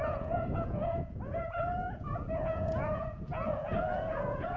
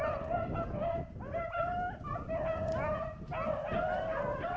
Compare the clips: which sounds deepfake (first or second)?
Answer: first